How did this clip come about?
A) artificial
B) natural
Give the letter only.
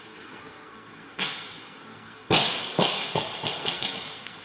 A